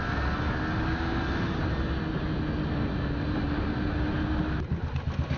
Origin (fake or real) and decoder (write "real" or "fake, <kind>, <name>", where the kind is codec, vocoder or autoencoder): real